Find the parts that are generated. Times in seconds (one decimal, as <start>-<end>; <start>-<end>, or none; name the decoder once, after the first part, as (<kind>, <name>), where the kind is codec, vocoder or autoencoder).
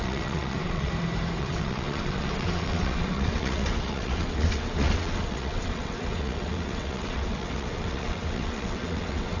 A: 0.0-0.9 (vocoder, WaveNeXt); 1.4-9.4